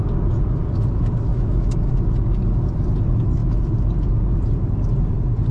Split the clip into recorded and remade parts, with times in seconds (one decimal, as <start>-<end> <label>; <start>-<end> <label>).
0.0-1.3 recorded; 1.3-1.9 remade; 1.9-5.5 recorded